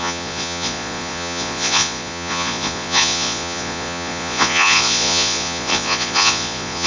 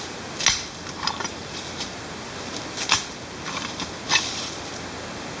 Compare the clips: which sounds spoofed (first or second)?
first